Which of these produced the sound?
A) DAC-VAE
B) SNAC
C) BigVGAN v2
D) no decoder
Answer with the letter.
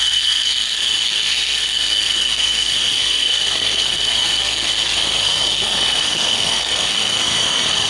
B